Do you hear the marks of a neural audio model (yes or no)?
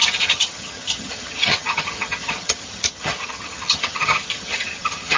yes